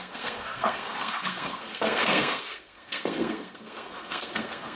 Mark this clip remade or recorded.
remade